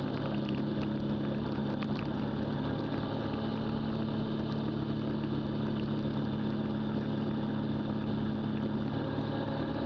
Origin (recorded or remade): recorded